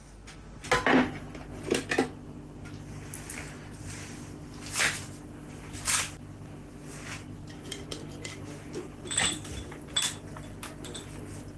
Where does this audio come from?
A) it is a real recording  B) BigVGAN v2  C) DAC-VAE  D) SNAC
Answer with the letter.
A